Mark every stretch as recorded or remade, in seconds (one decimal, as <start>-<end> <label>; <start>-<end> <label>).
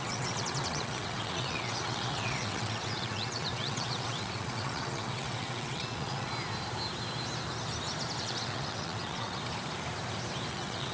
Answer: 0.0-6.3 remade; 6.3-8.2 recorded; 8.2-9.4 remade; 9.4-10.5 recorded; 10.5-10.9 remade